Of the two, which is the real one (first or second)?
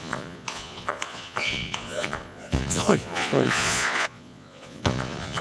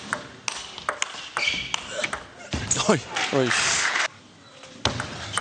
second